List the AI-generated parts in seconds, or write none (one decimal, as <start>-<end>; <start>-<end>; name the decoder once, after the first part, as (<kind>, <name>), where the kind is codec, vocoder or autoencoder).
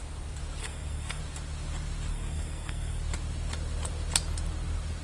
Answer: 0.6-1.2 (codec, SNAC); 2.1-3.0